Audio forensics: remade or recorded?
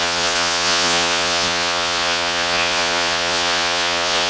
remade